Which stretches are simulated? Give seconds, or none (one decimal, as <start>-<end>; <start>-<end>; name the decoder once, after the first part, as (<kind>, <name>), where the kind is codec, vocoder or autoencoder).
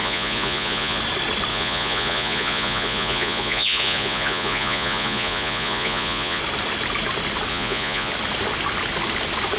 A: 0.0-1.0 (vocoder, Vocos); 1.5-6.4; 7.5-8.1